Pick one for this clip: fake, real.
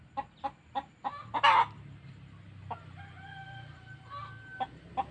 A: real